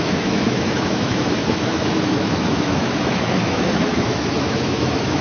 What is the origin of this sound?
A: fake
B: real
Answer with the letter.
A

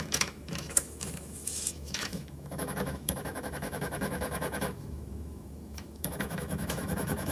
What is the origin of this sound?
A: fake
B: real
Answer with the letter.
A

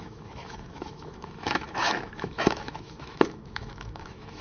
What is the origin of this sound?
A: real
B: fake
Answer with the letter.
B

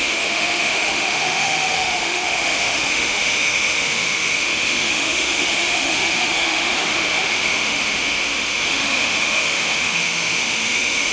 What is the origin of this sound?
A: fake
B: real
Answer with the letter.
A